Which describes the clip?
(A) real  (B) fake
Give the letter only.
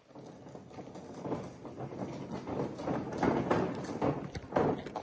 A